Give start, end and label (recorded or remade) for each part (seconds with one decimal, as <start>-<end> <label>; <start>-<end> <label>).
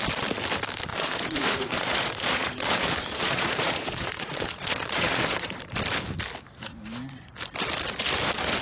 0.0-0.9 recorded; 0.9-5.6 remade; 5.6-8.6 recorded